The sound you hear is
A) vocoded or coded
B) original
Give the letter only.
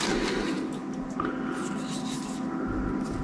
B